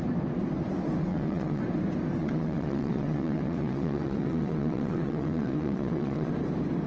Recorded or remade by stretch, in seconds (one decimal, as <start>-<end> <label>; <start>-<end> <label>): 0.0-1.1 recorded; 1.1-1.6 remade; 1.6-2.2 recorded; 2.2-6.3 remade; 6.3-6.9 recorded